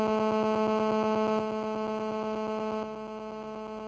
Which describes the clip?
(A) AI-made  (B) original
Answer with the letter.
B